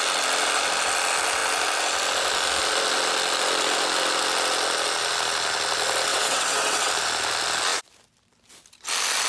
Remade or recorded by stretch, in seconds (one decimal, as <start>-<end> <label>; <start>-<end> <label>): 0.0-6.1 recorded; 6.1-6.9 remade; 6.9-9.3 recorded